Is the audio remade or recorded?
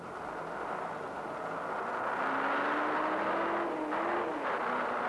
recorded